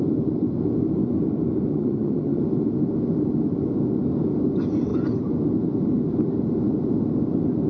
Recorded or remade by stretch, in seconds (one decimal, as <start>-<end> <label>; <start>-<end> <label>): 0.0-1.7 recorded; 1.7-2.4 remade; 2.4-7.7 recorded